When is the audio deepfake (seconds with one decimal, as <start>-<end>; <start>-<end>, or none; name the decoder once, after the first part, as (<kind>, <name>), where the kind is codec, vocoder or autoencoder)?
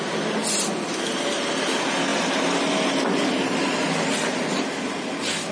2.1-4.7 (vocoder, BigVGAN v2)